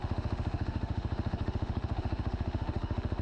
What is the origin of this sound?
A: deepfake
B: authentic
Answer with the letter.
A